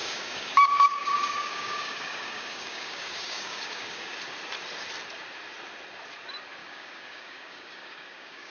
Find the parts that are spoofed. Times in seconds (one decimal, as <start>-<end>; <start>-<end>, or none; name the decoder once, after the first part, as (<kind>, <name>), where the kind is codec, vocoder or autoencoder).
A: 0.0-4.1 (codec, DAC); 6.6-8.5